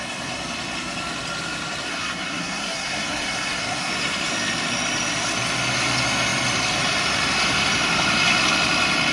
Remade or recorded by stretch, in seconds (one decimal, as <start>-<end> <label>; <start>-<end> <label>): 0.0-1.9 recorded; 1.9-3.9 remade; 3.9-9.1 recorded